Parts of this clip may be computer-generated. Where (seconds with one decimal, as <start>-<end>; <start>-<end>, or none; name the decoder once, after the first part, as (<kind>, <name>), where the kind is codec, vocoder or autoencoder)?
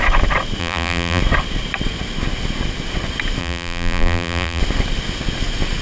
0.6-1.2 (vocoder, BigVGAN v2); 3.4-4.6